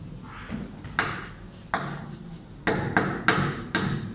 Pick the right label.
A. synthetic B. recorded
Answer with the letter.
B